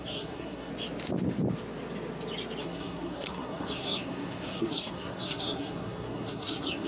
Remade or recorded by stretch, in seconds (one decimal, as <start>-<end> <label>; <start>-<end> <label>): 0.0-0.7 remade; 0.7-2.6 recorded; 2.6-6.9 remade